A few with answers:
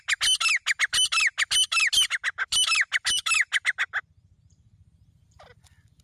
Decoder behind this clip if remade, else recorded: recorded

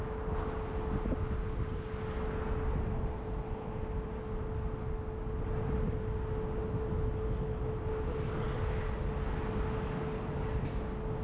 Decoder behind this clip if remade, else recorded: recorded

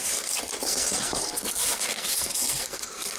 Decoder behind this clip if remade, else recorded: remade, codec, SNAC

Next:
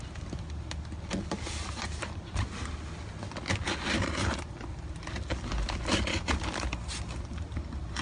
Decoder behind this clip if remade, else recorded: recorded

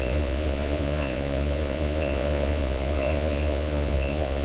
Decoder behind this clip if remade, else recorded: remade, vocoder, Vocos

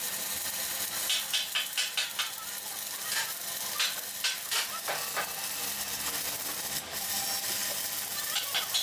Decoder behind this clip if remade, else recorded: recorded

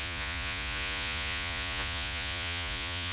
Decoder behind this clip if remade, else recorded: remade, vocoder, Vocos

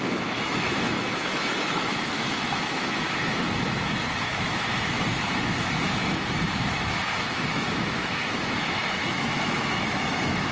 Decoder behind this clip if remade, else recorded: remade, autoencoder, DAC-VAE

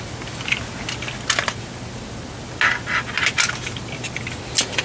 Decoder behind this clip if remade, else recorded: recorded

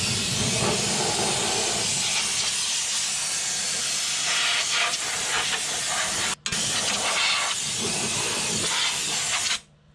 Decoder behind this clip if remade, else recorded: recorded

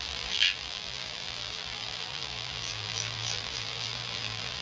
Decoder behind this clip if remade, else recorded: remade, vocoder, BigVGAN v2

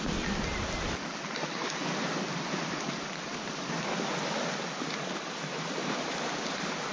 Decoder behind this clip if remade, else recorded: recorded